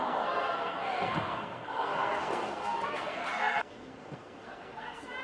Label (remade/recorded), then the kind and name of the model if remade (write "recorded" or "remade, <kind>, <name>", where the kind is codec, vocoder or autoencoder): remade, codec, SNAC